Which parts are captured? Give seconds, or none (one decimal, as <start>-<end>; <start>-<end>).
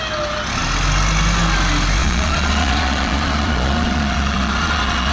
0.0-2.0